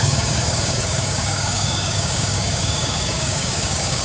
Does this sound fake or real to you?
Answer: fake